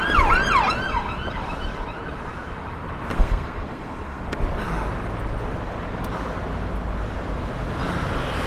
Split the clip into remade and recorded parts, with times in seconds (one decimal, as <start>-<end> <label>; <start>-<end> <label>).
0.0-3.1 recorded; 3.1-4.2 remade; 4.2-8.5 recorded